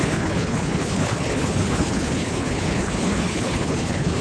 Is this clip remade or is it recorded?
remade